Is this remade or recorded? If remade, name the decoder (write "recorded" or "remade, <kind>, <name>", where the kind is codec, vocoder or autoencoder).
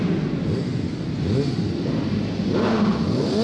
recorded